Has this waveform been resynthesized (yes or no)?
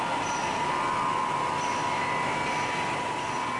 no